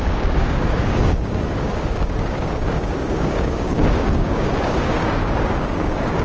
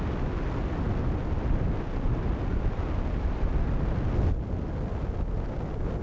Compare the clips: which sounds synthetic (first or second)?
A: first